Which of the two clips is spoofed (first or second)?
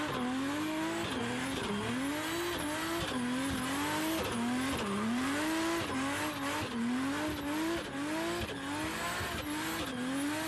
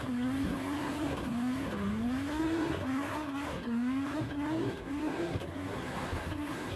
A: second